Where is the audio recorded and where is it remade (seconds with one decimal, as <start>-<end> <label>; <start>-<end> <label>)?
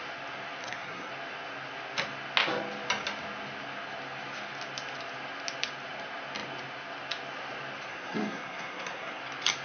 0.0-0.6 recorded; 0.6-1.1 remade; 1.1-7.9 recorded; 7.9-9.2 remade; 9.2-9.6 recorded